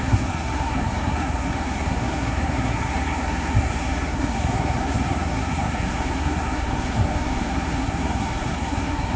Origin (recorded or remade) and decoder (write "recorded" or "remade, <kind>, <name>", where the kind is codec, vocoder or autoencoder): remade, codec, SNAC